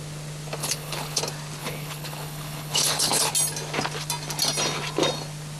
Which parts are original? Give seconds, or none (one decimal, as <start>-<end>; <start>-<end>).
0.0-0.6; 1.2-1.6; 3.3-5.6